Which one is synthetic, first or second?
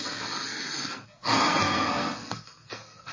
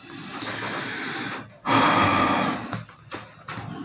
first